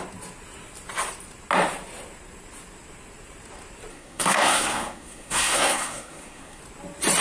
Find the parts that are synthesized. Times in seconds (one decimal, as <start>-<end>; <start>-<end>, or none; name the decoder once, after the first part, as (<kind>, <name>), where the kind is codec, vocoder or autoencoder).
3.9-6.6 (codec, SNAC)